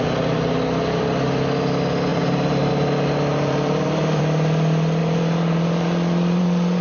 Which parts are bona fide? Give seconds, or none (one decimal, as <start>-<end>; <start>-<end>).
0.0-2.1; 2.7-3.3; 4.2-5.0